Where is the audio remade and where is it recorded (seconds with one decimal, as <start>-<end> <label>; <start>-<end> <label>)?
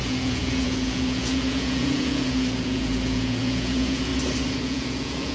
0.0-4.1 remade; 4.1-4.6 recorded; 4.6-5.3 remade